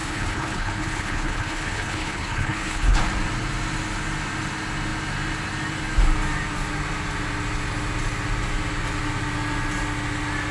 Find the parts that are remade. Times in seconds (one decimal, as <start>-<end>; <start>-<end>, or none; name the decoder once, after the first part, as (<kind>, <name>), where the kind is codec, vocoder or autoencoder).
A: 0.0-3.0 (codec, HILCodec)